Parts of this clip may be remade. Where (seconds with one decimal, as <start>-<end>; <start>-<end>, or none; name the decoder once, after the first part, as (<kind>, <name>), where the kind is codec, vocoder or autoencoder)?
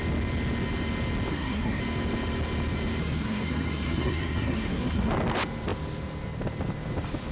1.3-1.8 (codec, SNAC); 3.0-5.1